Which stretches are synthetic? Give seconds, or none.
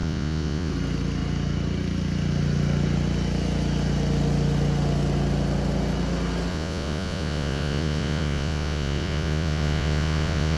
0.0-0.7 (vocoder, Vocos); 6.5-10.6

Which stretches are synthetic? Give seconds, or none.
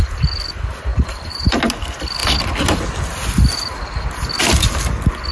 0.9-1.6 (vocoder, BigVGAN v2)